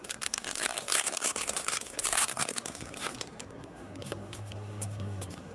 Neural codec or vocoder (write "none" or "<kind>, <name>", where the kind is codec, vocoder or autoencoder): codec, SNAC